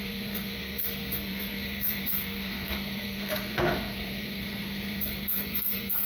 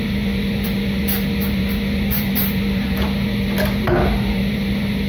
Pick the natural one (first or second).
second